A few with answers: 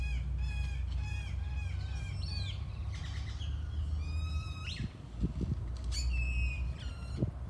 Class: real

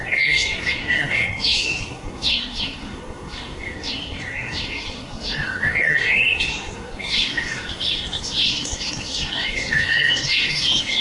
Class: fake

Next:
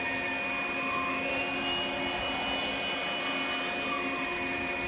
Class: real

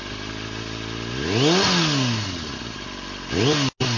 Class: real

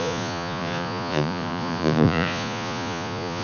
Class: fake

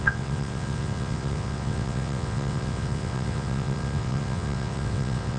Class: fake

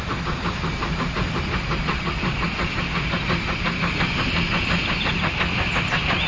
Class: real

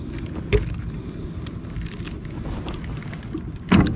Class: real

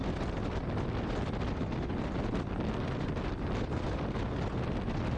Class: real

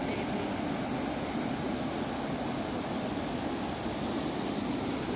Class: real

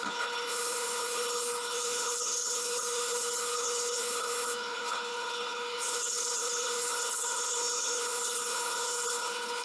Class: fake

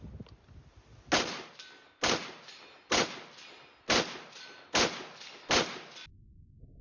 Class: real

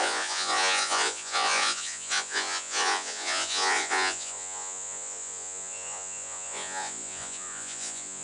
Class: fake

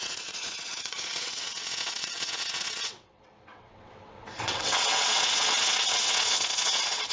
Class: fake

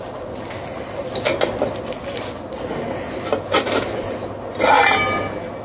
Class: real